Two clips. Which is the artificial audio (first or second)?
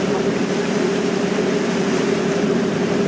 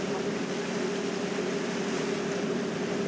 first